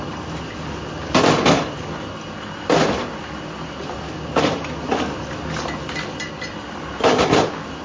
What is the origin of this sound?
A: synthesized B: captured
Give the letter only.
B